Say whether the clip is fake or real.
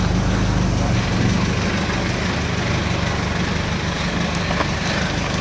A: real